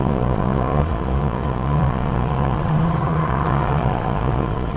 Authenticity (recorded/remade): remade